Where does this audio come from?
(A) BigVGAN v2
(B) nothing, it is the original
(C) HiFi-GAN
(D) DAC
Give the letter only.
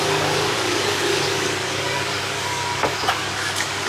D